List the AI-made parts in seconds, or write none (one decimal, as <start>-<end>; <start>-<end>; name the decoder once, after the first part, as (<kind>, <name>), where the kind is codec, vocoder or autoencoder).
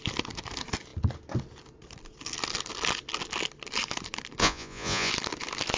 4.4-5.1 (vocoder, Vocos)